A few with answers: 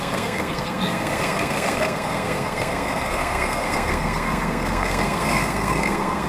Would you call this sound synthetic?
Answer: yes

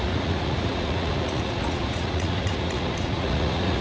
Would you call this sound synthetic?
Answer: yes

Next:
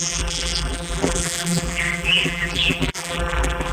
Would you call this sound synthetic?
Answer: yes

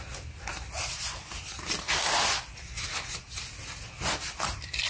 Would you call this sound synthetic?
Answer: no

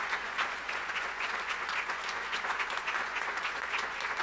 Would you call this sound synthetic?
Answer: yes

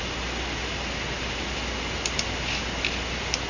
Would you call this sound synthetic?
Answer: no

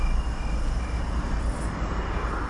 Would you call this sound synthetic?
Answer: no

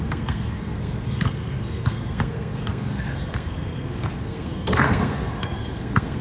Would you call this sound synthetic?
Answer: yes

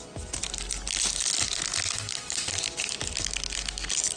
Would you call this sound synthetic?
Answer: no